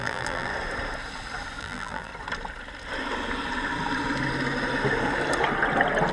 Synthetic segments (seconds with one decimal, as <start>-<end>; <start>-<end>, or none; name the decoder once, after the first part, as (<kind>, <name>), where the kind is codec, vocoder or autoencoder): 0.0-0.5 (vocoder, BigVGAN v2); 1.6-2.1